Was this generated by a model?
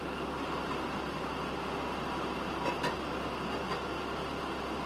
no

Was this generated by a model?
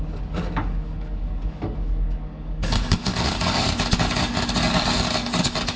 yes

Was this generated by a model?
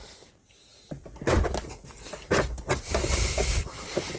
no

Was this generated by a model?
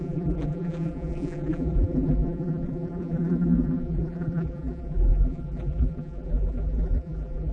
yes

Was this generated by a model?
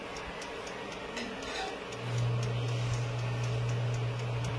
no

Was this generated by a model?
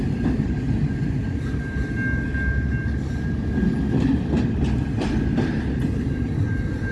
no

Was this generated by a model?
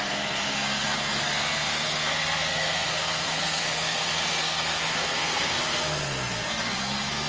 yes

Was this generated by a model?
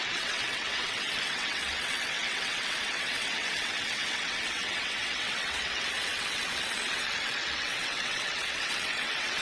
yes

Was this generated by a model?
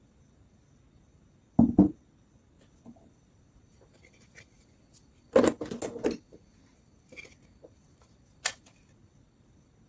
no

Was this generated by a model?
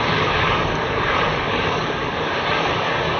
yes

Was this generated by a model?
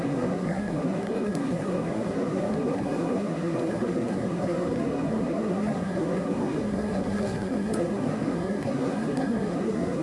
yes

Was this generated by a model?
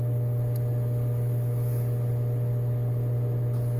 no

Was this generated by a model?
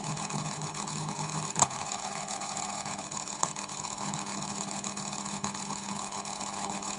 yes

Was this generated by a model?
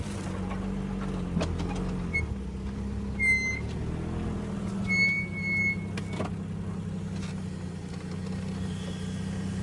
no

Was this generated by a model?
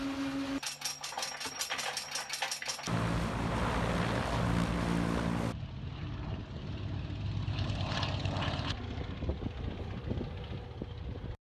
no